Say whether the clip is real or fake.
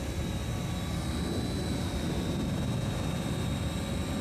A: real